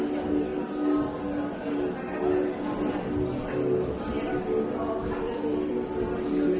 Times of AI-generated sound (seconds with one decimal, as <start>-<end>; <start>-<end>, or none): none